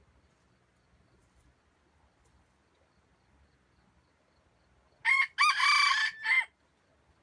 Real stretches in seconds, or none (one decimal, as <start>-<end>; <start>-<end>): 0.0-7.2